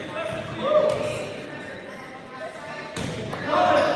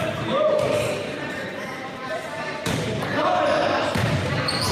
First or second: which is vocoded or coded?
second